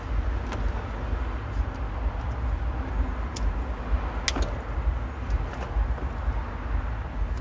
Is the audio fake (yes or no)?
no